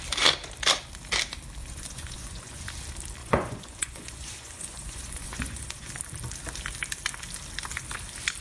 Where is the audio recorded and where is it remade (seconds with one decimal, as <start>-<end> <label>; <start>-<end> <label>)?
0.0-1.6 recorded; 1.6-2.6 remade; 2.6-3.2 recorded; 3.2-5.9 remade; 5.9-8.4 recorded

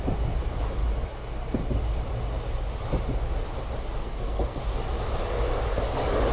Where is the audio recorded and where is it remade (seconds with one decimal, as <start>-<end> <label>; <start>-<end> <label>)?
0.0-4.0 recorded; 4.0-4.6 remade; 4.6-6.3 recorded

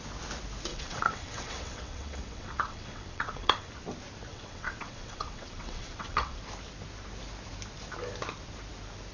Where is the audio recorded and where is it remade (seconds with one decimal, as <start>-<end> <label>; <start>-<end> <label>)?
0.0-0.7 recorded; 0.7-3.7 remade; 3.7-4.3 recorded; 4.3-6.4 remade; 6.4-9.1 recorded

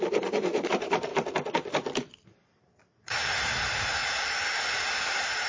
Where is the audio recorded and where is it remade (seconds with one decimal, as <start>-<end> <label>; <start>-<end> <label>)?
0.0-1.1 remade; 1.1-2.3 recorded; 2.3-4.0 remade; 4.0-5.1 recorded; 5.1-5.5 remade

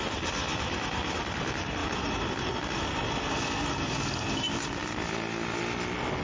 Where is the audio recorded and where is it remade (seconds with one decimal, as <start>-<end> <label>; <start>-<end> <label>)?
0.0-6.2 recorded

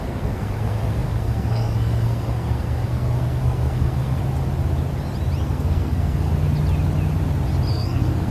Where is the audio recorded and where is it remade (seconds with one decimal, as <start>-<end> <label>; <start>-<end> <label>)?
0.0-4.2 remade; 4.2-5.4 recorded; 5.4-6.3 remade; 6.3-7.7 recorded; 7.7-8.3 remade